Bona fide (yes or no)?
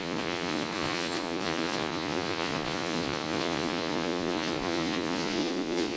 no